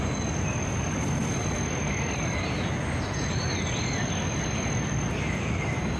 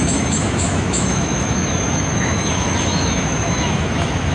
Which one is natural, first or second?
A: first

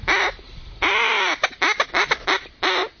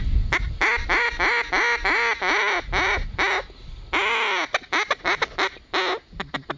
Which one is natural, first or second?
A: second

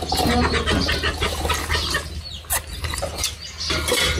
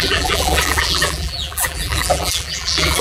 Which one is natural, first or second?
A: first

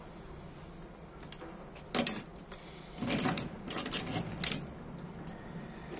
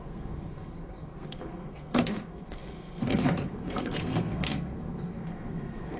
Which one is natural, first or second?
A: first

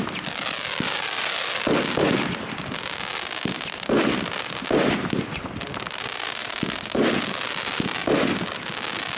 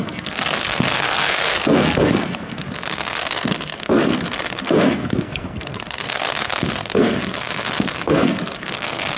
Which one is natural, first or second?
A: first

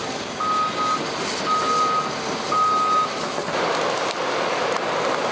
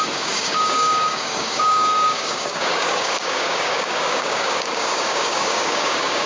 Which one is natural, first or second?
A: first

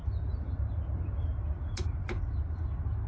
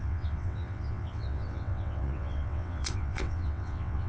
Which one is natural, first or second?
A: first